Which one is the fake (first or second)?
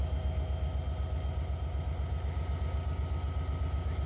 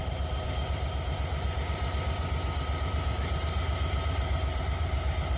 second